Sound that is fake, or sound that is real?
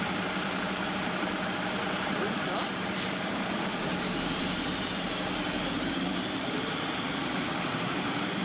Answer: fake